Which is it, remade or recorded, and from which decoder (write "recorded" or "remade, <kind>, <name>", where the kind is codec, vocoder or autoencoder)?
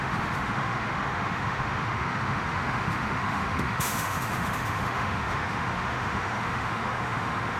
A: remade, autoencoder, DAC-VAE